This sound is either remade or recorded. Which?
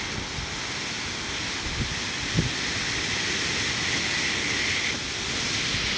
recorded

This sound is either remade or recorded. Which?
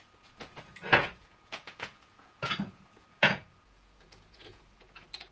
remade